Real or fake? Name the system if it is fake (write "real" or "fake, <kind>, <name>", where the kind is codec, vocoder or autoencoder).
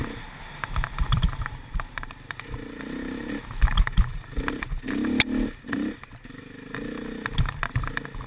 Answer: real